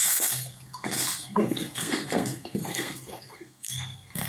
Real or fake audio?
fake